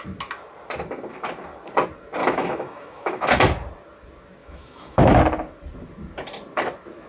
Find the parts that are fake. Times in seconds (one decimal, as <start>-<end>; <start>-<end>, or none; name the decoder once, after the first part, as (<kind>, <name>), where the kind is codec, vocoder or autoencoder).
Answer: 2.2-3.3 (autoencoder, DAC-VAE); 4.4-5.2

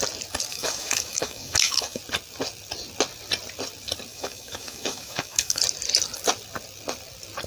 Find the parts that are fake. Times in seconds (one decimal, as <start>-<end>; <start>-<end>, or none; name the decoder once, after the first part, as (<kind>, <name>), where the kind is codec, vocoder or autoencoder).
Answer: 0.5-2.0 (autoencoder, DAC-VAE); 4.1-5.6